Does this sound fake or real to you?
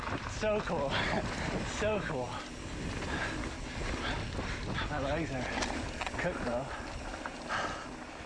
real